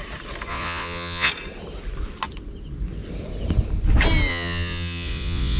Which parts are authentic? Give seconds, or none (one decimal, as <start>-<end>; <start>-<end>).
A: 0.0-0.5; 1.3-4.3